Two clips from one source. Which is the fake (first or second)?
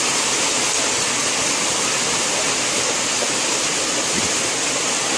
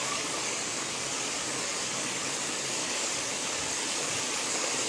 second